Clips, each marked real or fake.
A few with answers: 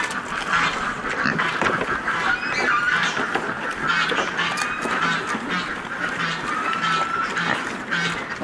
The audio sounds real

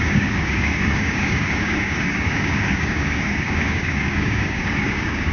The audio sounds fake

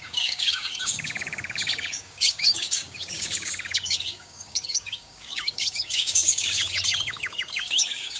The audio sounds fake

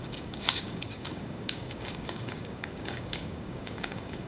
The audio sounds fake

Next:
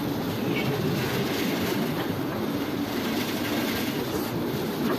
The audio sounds real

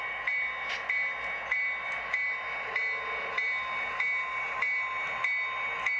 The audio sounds real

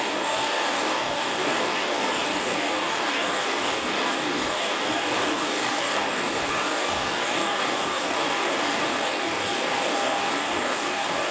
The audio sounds fake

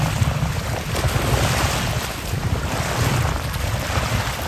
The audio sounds real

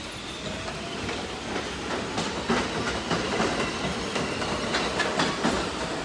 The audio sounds real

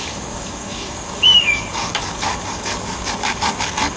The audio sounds fake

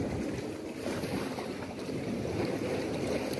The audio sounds real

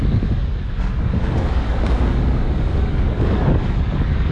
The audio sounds fake